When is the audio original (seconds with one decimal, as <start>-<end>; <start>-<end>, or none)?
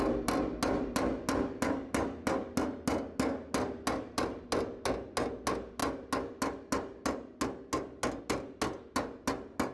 0.0-9.7